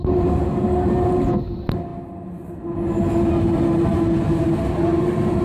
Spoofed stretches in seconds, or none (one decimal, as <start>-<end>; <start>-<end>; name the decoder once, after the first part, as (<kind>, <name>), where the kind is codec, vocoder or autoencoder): none